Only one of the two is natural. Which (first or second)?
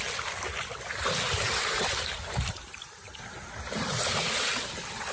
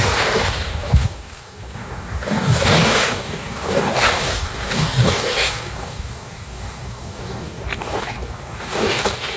first